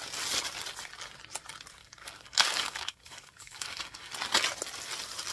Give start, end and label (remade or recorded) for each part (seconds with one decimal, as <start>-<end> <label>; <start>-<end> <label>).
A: 0.0-1.8 recorded; 1.8-4.1 remade; 4.1-5.3 recorded

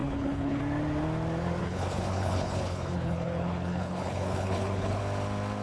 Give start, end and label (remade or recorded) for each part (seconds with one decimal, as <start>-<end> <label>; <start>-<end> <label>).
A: 0.0-0.6 remade; 0.6-1.6 recorded; 1.6-5.0 remade; 5.0-5.6 recorded

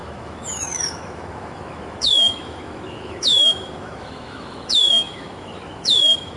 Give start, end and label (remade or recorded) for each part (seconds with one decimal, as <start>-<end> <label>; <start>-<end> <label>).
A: 0.0-6.4 remade

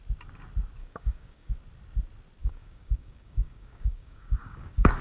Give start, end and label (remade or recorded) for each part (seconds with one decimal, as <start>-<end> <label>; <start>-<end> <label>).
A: 0.0-0.8 recorded; 0.8-1.5 remade; 1.5-2.4 recorded; 2.4-5.0 remade

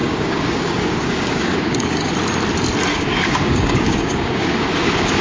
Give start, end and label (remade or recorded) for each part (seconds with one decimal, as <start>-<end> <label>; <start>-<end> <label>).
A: 0.0-2.1 remade; 2.1-2.9 recorded; 2.9-5.2 remade

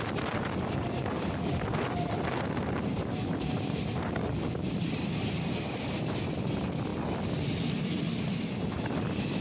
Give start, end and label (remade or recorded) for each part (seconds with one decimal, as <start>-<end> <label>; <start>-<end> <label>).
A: 0.0-6.9 remade; 6.9-8.2 recorded; 8.2-9.4 remade

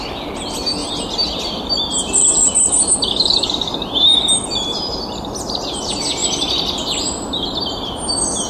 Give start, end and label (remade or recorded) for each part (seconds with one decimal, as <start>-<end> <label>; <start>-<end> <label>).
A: 0.0-8.5 recorded

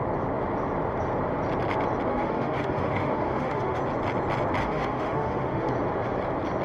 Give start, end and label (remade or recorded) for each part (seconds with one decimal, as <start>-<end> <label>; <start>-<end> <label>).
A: 0.0-2.1 recorded; 2.1-3.8 remade; 3.8-4.6 recorded; 4.6-5.7 remade; 5.7-6.6 recorded